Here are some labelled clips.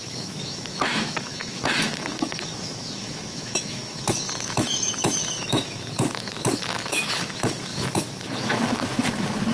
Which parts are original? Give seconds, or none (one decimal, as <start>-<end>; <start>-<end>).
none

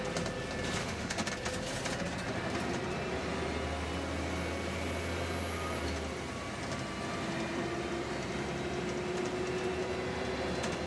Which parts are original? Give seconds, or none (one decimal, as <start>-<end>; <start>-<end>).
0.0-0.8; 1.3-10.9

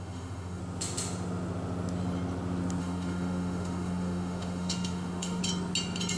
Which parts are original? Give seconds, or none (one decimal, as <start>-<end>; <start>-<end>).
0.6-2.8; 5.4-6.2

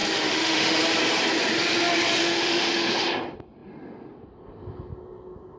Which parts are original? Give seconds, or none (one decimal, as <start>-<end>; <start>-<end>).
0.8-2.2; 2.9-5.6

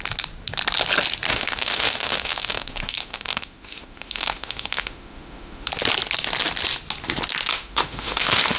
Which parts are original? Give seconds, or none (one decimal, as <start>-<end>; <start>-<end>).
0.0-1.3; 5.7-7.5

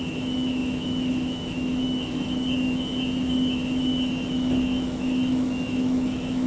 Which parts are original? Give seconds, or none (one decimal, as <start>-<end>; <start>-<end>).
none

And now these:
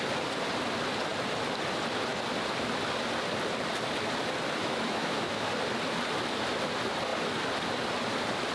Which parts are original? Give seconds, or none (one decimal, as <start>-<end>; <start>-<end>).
0.0-4.6; 5.5-8.5

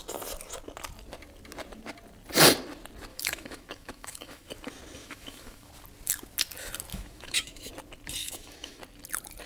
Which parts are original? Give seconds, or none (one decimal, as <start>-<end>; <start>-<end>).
0.0-3.1; 4.5-5.0; 5.7-6.9; 7.7-8.2; 8.8-9.5